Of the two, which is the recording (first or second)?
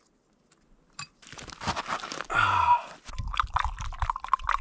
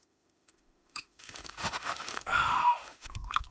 first